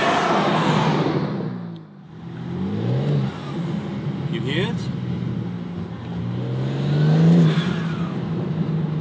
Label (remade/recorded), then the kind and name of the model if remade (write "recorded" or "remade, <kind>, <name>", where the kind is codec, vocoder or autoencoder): recorded